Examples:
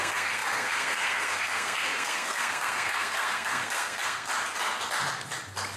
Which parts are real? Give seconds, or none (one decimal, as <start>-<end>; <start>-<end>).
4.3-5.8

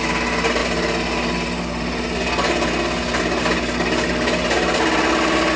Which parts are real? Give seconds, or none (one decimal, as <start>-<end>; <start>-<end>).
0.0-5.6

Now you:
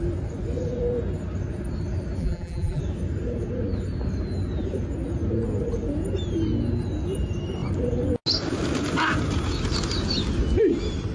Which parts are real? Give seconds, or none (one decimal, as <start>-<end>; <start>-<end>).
0.0-2.2; 2.8-11.1

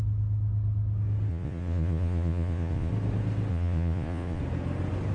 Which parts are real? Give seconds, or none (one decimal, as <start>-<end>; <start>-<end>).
0.0-1.3; 2.9-3.5; 4.4-5.1

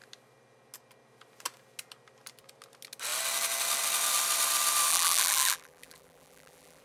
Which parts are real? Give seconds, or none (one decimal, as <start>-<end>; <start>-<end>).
0.0-4.9

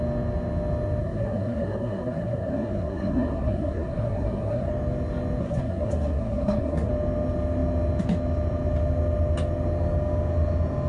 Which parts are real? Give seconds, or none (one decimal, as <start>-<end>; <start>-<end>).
0.0-1.0; 4.7-5.4; 6.9-10.9

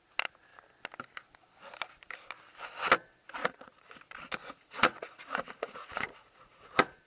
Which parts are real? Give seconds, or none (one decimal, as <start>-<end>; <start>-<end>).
0.0-3.4; 4.0-4.4